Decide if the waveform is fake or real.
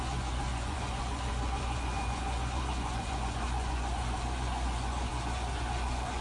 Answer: fake